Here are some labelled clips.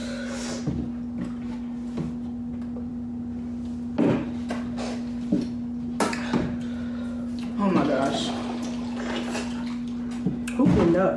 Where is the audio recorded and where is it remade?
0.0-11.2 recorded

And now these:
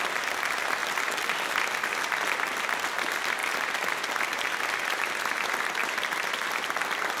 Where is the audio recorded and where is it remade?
0.0-0.8 recorded; 0.8-1.3 remade; 1.3-5.8 recorded; 5.8-7.2 remade

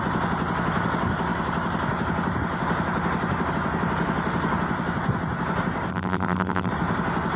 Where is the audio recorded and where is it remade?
0.0-5.9 recorded; 5.9-6.7 remade; 6.7-7.4 recorded

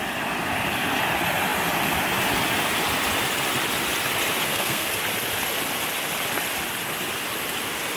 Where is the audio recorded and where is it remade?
0.0-4.5 recorded; 4.5-5.0 remade; 5.0-8.0 recorded

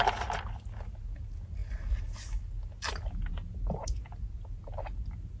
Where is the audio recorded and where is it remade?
0.0-5.4 recorded

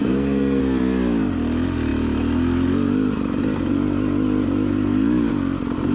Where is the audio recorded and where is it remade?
0.0-0.6 remade; 0.6-5.9 recorded

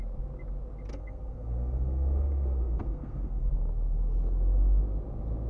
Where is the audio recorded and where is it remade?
0.0-0.9 recorded; 0.9-3.5 remade; 3.5-5.5 recorded